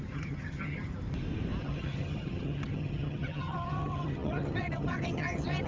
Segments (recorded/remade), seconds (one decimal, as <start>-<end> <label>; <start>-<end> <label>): 0.0-0.9 remade; 0.9-1.6 recorded; 1.6-5.7 remade